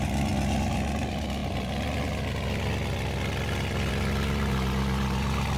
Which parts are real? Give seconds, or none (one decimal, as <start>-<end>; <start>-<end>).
0.0-5.6